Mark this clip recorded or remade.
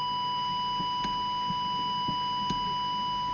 recorded